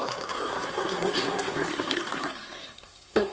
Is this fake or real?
fake